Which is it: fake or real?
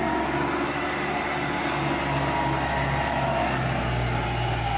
real